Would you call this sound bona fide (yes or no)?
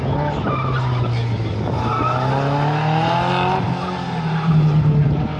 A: yes